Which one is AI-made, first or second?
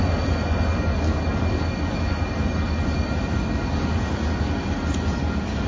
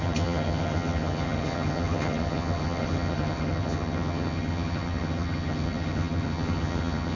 second